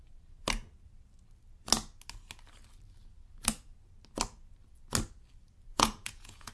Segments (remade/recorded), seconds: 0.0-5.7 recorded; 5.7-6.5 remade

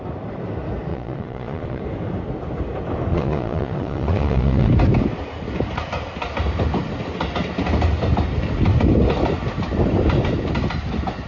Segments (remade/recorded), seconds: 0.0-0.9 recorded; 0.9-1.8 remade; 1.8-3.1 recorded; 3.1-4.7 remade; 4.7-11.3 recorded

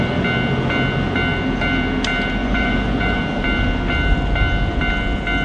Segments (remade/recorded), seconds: 0.0-2.4 recorded; 2.4-3.2 remade; 3.2-5.4 recorded